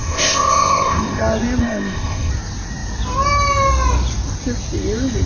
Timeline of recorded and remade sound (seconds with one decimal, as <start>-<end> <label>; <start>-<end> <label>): 0.0-1.2 remade; 1.2-1.6 recorded; 1.6-2.3 remade; 2.3-5.3 recorded